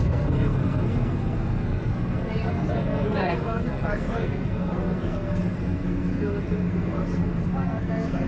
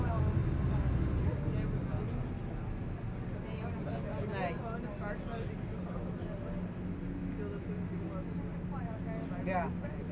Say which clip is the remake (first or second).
first